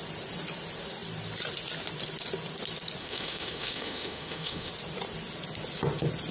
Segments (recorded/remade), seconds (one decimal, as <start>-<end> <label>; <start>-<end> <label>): 0.0-3.0 recorded; 3.0-4.7 remade; 4.7-6.3 recorded